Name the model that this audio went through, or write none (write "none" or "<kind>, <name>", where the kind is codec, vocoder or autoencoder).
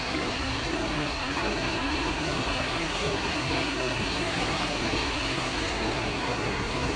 codec, SNAC